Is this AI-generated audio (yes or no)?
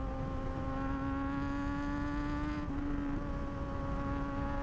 no